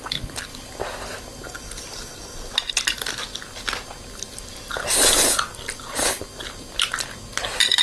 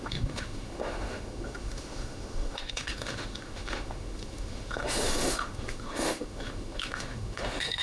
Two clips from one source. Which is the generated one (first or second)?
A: second